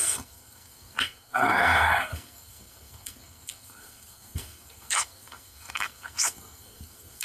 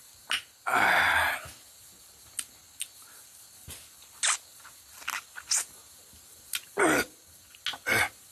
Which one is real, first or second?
second